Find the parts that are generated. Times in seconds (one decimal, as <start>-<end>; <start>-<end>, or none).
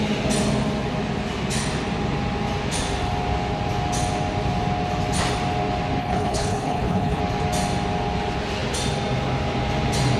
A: 6.0-7.2